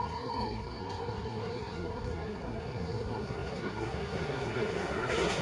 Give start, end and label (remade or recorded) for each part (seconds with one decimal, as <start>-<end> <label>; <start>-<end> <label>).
0.0-5.4 remade